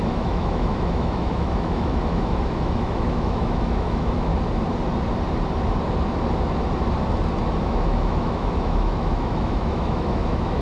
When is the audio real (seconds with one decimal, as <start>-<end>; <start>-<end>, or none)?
4.3-7.6